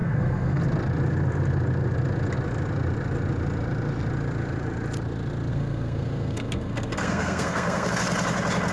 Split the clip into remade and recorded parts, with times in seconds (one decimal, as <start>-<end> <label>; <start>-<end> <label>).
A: 0.0-0.6 remade; 0.6-5.5 recorded; 5.5-7.9 remade; 7.9-8.7 recorded